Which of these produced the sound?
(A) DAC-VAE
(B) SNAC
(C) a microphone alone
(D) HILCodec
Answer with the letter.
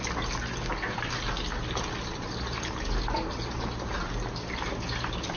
C